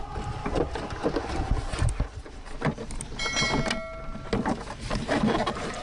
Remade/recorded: recorded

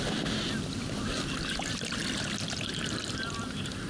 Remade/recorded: recorded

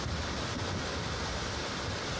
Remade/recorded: recorded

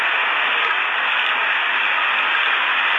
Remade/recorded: recorded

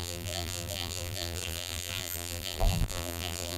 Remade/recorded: remade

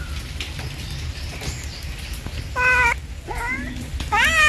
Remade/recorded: recorded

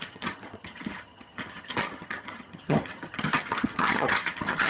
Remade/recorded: remade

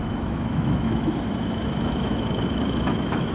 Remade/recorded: remade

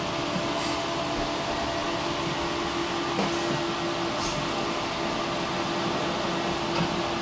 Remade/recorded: recorded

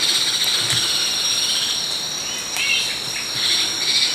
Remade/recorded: recorded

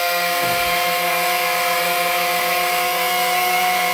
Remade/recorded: remade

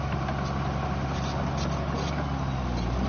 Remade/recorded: recorded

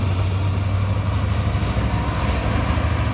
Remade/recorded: recorded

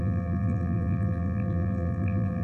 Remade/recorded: remade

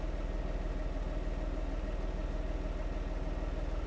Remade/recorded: recorded